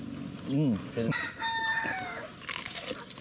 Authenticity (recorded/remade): recorded